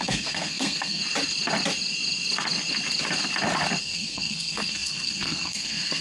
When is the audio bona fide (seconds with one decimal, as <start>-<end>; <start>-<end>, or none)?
1.0-3.8